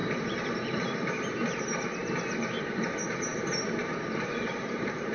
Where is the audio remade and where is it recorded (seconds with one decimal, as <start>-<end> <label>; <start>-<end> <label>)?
0.0-1.4 remade; 1.4-3.3 recorded; 3.3-5.1 remade